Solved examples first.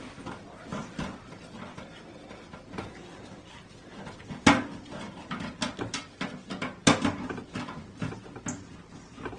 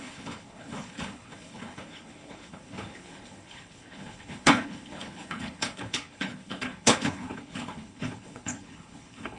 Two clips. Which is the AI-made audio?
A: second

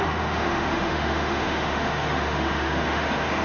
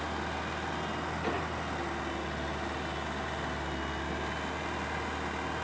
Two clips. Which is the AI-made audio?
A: first